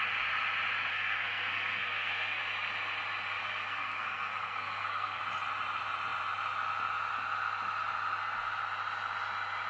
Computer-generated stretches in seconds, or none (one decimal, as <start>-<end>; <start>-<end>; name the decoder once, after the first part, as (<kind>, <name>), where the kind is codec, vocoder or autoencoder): 0.9-2.4 (codec, SNAC); 3.4-5.2